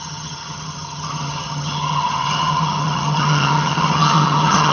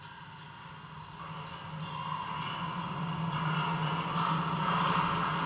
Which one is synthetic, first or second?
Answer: first